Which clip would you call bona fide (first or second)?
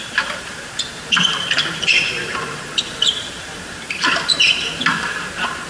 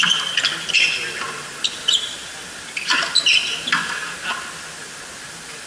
second